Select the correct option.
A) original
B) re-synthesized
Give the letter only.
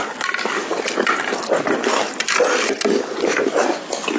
A